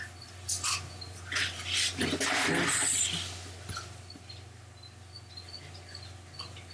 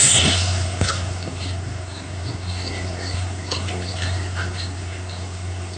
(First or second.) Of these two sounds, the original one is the first